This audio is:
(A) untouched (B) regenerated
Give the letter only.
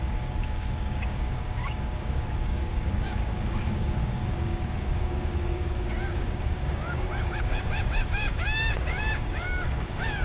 B